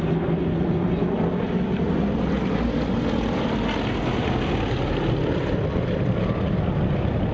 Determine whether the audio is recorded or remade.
recorded